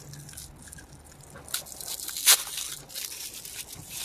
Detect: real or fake real